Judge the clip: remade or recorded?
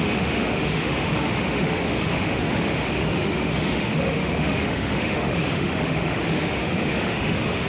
remade